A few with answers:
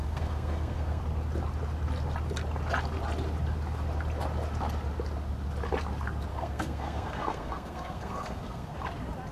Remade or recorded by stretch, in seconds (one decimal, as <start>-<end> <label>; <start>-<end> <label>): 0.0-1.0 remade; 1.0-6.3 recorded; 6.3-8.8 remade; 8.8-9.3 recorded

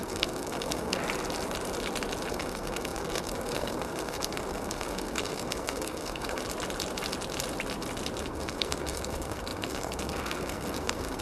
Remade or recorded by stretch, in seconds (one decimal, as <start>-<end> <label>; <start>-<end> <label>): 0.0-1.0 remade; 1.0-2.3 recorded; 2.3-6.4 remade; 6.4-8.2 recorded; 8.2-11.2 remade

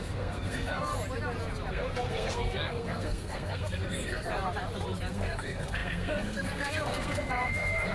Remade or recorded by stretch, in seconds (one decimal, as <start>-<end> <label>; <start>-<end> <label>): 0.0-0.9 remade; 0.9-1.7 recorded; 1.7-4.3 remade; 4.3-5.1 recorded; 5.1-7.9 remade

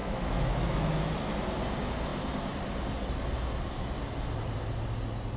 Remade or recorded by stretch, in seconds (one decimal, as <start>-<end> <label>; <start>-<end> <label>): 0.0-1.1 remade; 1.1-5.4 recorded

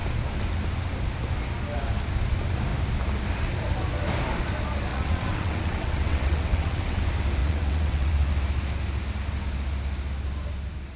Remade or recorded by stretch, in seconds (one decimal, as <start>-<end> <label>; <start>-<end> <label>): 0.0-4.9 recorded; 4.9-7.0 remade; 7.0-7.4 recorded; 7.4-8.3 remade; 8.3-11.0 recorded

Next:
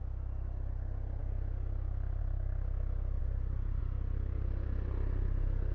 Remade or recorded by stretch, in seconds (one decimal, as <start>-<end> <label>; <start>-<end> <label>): 0.0-3.2 recorded; 3.2-3.8 remade; 3.8-5.7 recorded

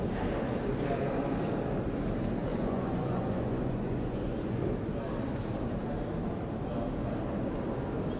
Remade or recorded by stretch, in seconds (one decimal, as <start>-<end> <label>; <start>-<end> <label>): 0.0-2.5 recorded; 2.5-4.6 remade; 4.6-8.2 recorded